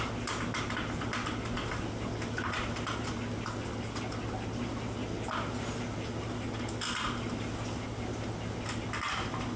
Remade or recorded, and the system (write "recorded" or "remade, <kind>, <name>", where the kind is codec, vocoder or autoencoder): recorded